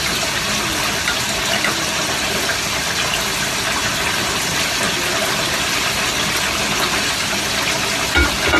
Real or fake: real